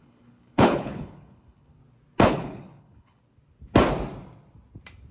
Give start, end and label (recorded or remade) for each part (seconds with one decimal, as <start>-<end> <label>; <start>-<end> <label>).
0.0-1.8 remade; 1.8-2.3 recorded; 2.3-3.2 remade; 3.2-5.1 recorded